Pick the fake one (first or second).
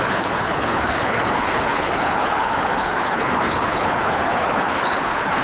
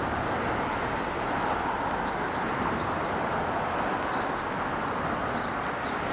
first